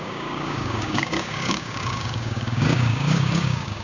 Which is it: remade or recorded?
remade